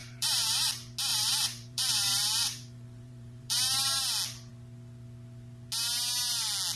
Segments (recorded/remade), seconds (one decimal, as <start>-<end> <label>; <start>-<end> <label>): 0.0-0.7 remade; 0.7-1.1 recorded; 1.1-4.0 remade; 4.0-6.8 recorded